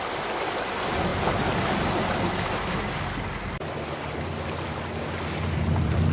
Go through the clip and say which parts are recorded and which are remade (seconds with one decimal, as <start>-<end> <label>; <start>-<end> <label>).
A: 0.0-6.1 recorded